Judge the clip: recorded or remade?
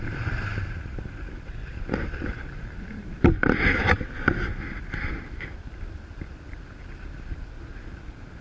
remade